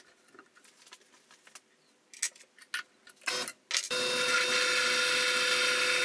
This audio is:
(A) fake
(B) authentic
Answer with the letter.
B